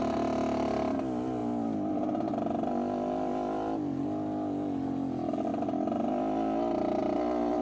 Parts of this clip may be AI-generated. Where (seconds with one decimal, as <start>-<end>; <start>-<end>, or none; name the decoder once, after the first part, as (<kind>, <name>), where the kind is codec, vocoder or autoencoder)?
none